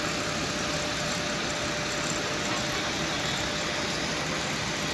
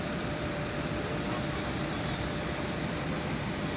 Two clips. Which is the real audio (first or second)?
first